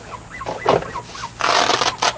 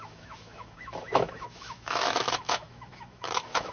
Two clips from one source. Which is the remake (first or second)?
second